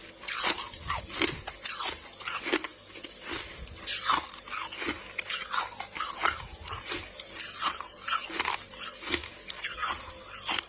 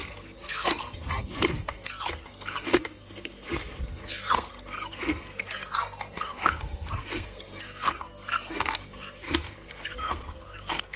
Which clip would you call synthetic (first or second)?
second